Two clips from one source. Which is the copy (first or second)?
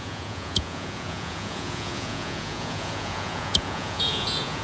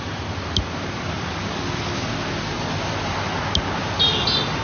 first